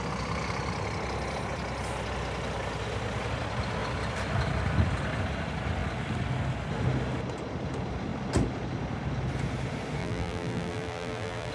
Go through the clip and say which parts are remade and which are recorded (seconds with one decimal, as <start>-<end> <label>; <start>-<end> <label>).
0.0-10.0 recorded; 10.0-11.5 remade